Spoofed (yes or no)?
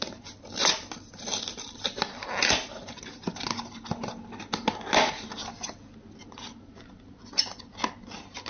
no